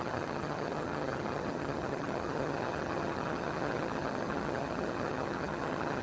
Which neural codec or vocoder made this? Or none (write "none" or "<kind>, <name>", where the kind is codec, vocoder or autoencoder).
vocoder, HiFi-GAN